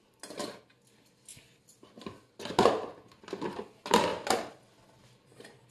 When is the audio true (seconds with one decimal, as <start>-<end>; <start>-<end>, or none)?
0.0-5.7